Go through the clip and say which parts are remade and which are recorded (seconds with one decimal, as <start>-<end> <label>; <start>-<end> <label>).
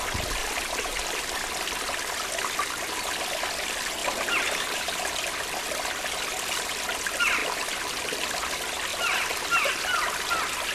0.0-0.4 recorded; 0.4-1.5 remade; 1.5-4.0 recorded; 4.0-5.1 remade; 5.1-7.4 recorded; 7.4-8.0 remade; 8.0-8.9 recorded; 8.9-9.7 remade; 9.7-10.7 recorded